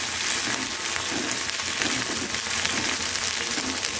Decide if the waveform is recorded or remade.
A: recorded